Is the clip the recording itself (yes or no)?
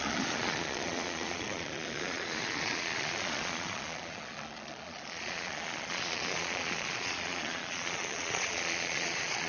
no